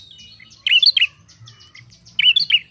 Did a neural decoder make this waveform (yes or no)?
no